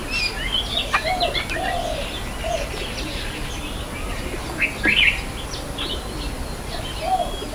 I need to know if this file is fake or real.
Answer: real